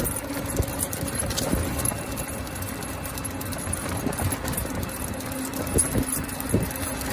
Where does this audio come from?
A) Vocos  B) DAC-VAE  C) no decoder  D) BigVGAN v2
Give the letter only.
C